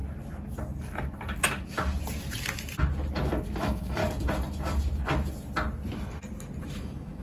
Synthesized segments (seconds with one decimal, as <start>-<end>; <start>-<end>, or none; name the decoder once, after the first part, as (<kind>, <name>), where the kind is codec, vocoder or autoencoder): 3.6-4.0 (autoencoder, DAC-VAE); 6.6-7.2